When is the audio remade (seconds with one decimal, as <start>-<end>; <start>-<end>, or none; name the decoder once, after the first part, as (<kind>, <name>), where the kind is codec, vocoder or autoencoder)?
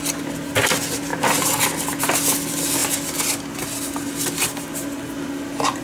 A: none